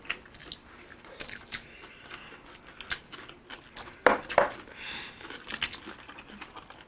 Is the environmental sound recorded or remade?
recorded